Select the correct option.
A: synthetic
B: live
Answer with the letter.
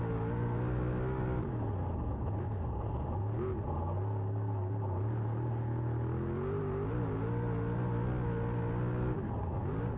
B